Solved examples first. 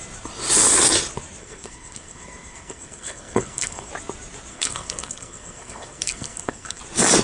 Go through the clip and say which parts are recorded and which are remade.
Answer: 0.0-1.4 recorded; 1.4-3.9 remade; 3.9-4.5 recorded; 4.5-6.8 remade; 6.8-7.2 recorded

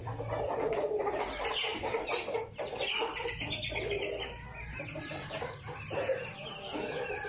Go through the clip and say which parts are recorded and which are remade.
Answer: 0.0-1.7 recorded; 1.7-3.8 remade; 3.8-7.3 recorded

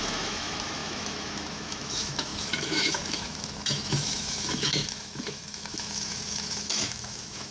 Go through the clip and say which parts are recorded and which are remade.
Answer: 0.0-7.5 remade

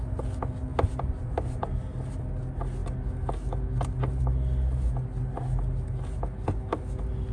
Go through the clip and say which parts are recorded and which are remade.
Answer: 0.0-0.7 recorded; 0.7-2.2 remade; 2.2-7.3 recorded

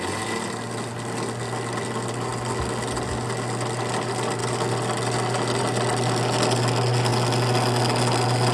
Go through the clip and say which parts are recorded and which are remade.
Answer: 0.0-8.5 recorded

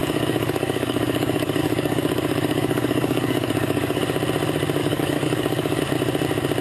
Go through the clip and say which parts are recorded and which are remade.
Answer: 0.0-4.0 remade; 4.0-4.8 recorded; 4.8-5.8 remade; 5.8-6.6 recorded